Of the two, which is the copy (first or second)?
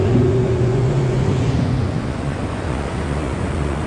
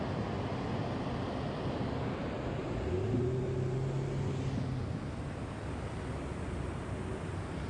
first